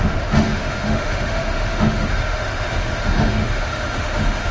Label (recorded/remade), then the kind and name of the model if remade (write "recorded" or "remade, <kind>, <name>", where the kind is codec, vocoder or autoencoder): remade, autoencoder, DAC-VAE